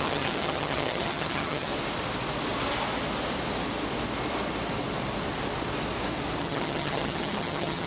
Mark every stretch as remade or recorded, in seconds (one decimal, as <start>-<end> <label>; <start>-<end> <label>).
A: 0.0-1.7 remade; 1.7-6.4 recorded; 6.4-7.9 remade